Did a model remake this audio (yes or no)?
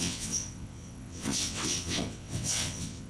yes